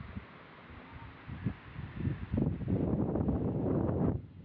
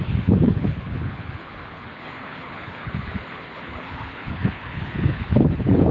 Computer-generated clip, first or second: second